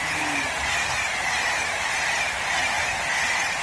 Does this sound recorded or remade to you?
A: recorded